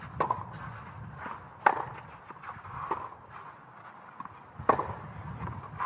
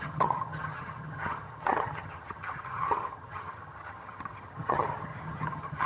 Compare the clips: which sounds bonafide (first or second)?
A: first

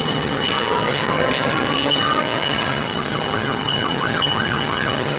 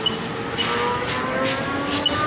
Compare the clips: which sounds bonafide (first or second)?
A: second